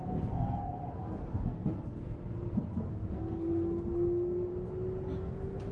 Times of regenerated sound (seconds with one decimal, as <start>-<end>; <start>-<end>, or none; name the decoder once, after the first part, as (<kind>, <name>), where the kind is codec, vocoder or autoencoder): 0.0-4.5 (codec, SNAC); 5.2-5.7